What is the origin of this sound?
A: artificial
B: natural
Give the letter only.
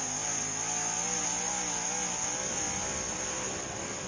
B